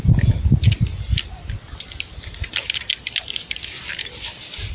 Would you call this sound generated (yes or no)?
no